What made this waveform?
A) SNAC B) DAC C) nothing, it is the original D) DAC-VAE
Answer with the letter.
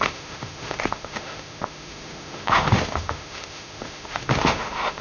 D